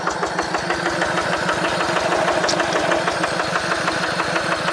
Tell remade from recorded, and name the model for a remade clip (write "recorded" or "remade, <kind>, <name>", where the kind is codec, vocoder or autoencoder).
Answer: recorded